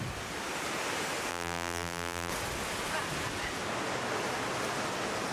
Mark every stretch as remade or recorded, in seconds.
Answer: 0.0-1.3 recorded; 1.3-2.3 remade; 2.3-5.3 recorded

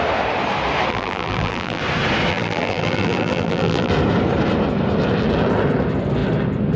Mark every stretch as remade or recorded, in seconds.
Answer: 0.0-0.9 recorded; 0.9-1.8 remade; 1.8-2.3 recorded; 2.3-3.9 remade; 3.9-6.8 recorded

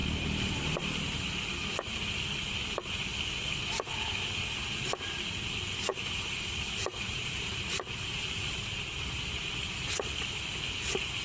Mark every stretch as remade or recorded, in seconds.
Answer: 0.0-1.5 remade; 1.5-5.9 recorded; 5.9-9.5 remade; 9.5-11.2 recorded